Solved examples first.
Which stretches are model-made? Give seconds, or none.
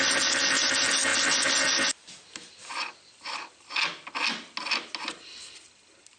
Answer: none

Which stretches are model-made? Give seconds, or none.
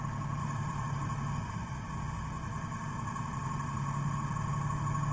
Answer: 0.4-1.9 (vocoder, BigVGAN v2)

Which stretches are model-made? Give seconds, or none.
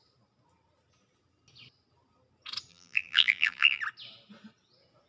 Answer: 2.7-3.8 (vocoder, BigVGAN v2)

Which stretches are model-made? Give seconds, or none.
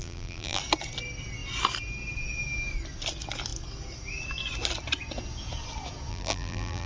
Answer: 0.0-0.6 (vocoder, BigVGAN v2); 6.1-6.9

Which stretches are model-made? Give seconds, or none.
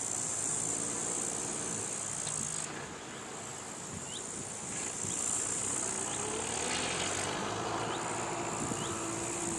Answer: none